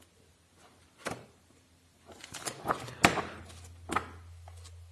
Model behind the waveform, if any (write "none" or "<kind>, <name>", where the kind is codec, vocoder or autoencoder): none